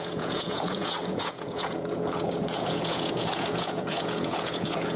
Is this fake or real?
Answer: fake